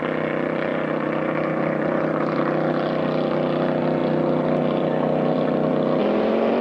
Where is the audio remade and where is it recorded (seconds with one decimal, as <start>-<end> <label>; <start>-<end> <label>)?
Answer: 0.0-0.7 recorded; 0.7-2.4 remade; 2.4-6.6 recorded